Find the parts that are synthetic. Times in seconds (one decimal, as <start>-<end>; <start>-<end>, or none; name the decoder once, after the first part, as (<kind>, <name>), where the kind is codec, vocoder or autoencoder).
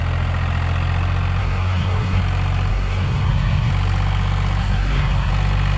1.4-2.2 (codec, SNAC); 2.7-3.7; 4.6-5.3